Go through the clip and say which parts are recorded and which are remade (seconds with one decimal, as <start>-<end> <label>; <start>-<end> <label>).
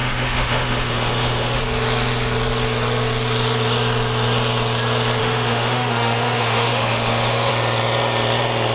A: 0.0-1.6 remade; 1.6-5.2 recorded; 5.2-7.5 remade; 7.5-8.7 recorded